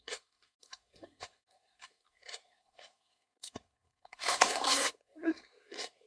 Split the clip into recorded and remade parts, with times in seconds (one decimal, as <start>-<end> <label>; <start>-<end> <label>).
0.0-6.1 remade